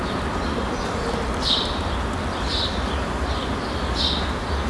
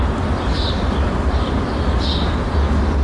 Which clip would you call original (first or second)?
first